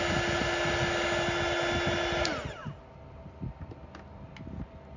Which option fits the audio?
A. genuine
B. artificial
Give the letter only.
A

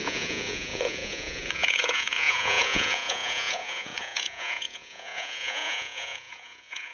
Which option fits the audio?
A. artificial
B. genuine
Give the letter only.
A